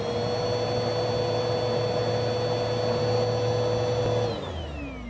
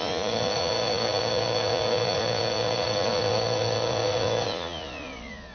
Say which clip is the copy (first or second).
second